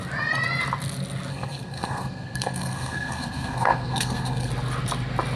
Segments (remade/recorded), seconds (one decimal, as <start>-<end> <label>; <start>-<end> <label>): 0.0-1.3 recorded; 1.3-4.5 remade; 4.5-5.4 recorded